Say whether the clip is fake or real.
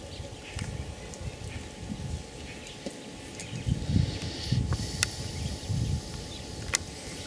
real